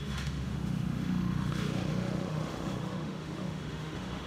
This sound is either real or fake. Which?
fake